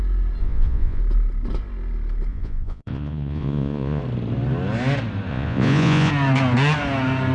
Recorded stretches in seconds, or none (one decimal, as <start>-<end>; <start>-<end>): 0.0-0.4; 1.0-2.3; 4.0-5.3; 6.1-7.3